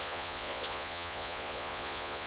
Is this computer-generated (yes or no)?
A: yes